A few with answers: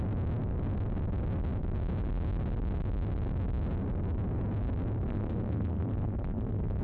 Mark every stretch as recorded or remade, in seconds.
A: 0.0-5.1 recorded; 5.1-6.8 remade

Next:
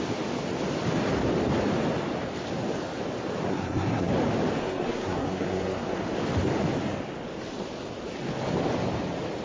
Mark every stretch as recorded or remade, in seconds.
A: 0.0-3.5 recorded; 3.5-4.1 remade; 4.1-4.6 recorded; 4.6-6.0 remade; 6.0-9.4 recorded

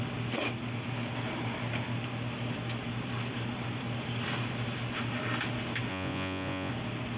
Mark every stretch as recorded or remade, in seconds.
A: 0.0-5.9 recorded; 5.9-6.7 remade; 6.7-7.2 recorded

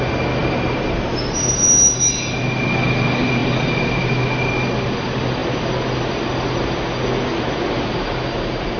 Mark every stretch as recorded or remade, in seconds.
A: 0.0-0.4 recorded; 0.4-1.1 remade; 1.1-8.8 recorded

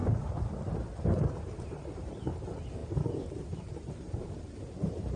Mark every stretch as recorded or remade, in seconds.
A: 0.0-1.3 recorded; 1.3-5.2 remade

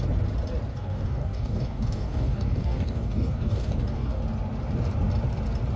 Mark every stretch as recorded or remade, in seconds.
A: 0.0-0.7 recorded; 0.7-4.2 remade; 4.2-5.8 recorded